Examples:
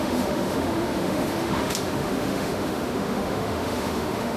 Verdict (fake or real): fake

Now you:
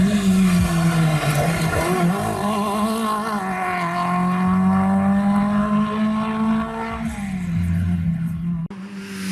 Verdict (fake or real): real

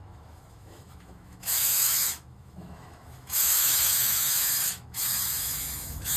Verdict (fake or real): fake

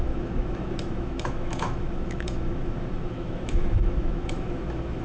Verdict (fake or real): fake